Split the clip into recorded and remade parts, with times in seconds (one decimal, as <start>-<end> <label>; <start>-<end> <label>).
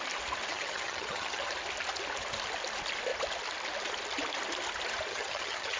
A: 0.0-0.5 recorded; 0.5-1.5 remade; 1.5-5.1 recorded; 5.1-5.8 remade